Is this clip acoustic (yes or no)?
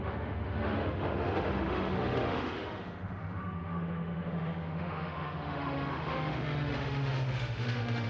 no